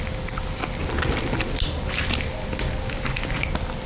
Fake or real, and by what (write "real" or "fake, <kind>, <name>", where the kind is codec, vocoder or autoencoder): real